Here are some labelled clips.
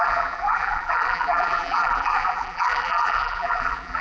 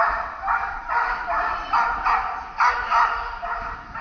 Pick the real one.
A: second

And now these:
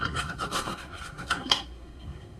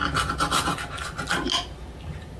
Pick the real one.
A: second